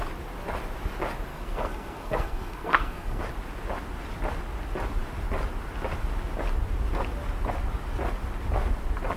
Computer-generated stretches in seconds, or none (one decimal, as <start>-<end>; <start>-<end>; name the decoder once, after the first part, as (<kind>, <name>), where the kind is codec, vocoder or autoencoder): 1.3-3.2 (codec, SNAC)